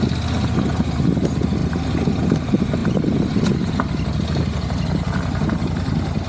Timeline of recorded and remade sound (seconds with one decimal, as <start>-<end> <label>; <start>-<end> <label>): 0.0-6.3 recorded